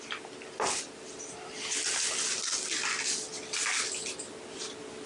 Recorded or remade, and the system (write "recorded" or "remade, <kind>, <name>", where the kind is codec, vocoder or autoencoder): recorded